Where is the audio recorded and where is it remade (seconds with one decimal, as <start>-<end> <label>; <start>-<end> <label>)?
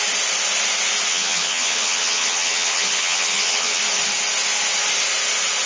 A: 0.0-1.1 recorded; 1.1-3.8 remade; 3.8-5.7 recorded